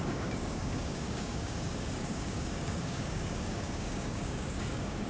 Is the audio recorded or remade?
remade